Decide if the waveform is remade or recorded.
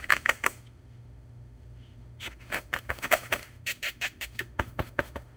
remade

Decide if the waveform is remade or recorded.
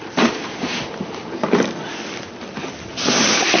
recorded